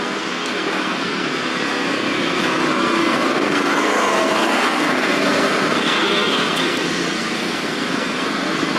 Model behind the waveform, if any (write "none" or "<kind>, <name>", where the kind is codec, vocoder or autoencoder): codec, SNAC